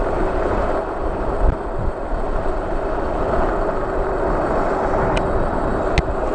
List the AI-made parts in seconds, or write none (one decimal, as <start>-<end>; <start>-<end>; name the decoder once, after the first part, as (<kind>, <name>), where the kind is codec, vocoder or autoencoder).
none